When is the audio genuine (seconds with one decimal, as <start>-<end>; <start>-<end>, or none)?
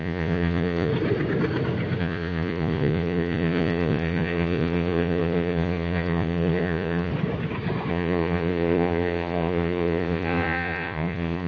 0.9-2.0; 7.1-7.9